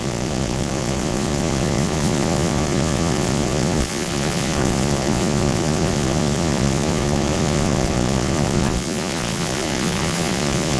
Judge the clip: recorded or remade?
remade